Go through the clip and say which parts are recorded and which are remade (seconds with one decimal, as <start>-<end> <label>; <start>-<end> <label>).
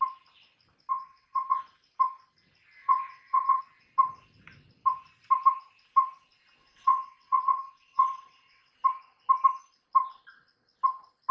0.0-0.9 recorded; 0.9-1.6 remade; 1.6-2.8 recorded; 2.8-3.6 remade; 3.6-6.6 recorded; 6.6-8.7 remade; 8.7-11.3 recorded